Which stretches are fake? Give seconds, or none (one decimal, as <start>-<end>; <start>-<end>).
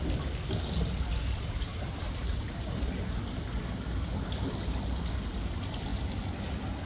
1.7-3.2